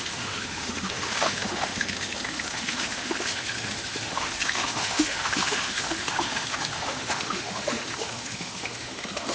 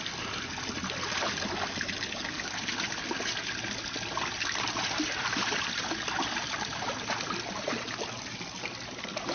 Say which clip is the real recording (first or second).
second